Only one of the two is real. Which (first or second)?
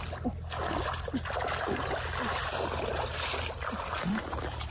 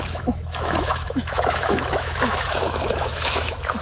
first